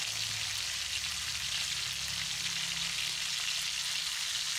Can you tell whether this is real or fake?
real